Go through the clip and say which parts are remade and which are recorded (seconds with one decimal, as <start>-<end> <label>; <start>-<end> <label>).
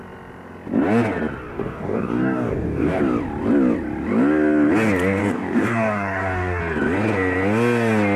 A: 0.0-1.5 recorded; 1.5-3.0 remade; 3.0-5.2 recorded; 5.2-6.6 remade; 6.6-8.2 recorded